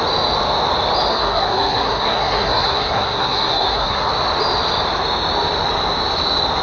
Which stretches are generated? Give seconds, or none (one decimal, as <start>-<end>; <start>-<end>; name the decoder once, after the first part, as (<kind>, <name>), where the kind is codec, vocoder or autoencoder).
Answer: 1.1-4.1 (codec, SNAC)